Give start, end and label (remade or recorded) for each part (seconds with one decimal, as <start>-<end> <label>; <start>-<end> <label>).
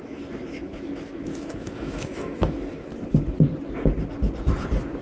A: 0.0-2.9 remade; 2.9-5.0 recorded